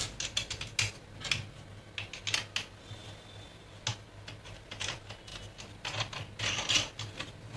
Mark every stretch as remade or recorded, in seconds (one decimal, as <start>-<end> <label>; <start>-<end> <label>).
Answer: 0.0-7.6 recorded